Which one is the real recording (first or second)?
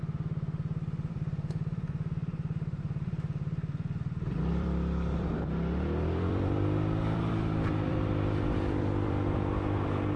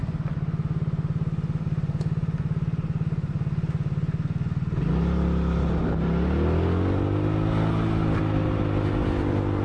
second